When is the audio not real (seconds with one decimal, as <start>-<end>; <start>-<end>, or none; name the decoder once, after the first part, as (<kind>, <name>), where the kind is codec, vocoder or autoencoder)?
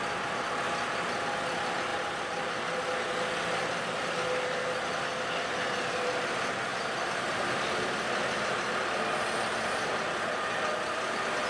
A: 6.7-9.1 (vocoder, BigVGAN v2)